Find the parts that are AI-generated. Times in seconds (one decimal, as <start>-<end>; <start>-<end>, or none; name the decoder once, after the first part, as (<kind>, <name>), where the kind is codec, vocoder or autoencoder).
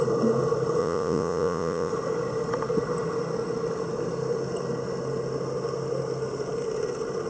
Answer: 0.8-1.9 (vocoder, Vocos)